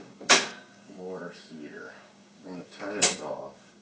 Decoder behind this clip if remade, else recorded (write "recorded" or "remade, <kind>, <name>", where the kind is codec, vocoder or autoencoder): remade, codec, DAC